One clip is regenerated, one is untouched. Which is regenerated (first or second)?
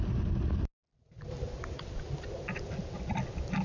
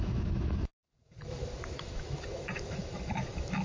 second